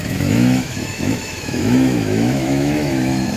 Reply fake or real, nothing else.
fake